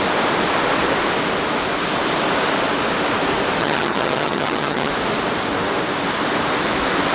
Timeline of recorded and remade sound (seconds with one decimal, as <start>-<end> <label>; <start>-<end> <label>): 0.0-3.6 recorded; 3.6-4.9 remade; 4.9-7.1 recorded